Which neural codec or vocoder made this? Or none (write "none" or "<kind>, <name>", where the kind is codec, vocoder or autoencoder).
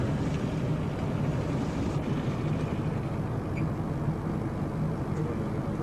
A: none